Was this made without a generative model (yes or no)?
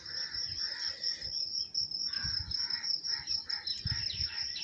yes